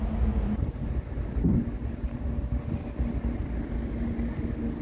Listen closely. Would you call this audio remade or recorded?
recorded